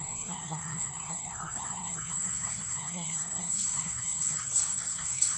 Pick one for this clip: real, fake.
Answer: fake